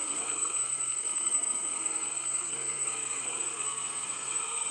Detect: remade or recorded remade